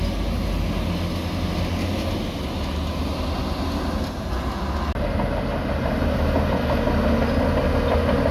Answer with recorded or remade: recorded